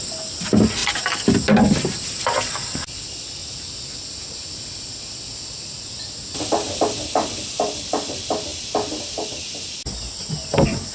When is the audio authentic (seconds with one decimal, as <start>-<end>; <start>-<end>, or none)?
0.0-10.9